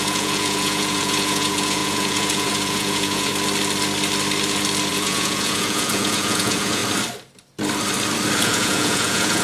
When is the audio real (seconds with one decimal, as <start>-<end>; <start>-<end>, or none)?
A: 3.3-4.9; 6.8-8.4